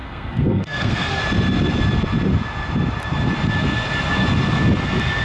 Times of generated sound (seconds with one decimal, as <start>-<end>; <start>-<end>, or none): 0.0-1.2